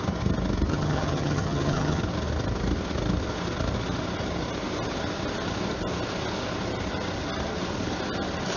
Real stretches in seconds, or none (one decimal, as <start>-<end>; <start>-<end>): 0.0-0.7; 2.0-8.6